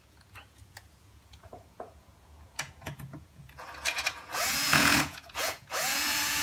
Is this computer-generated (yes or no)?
yes